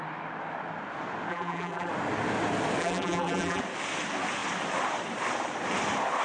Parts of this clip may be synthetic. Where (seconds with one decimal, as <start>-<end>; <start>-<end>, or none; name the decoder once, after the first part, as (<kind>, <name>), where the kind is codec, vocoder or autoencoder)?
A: 1.3-1.9 (vocoder, BigVGAN v2); 2.8-3.6